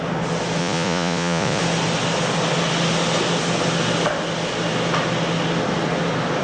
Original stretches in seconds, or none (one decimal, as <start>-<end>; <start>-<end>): 0.0-0.6; 1.6-6.4